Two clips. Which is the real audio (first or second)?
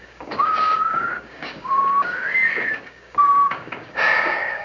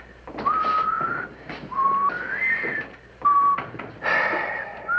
second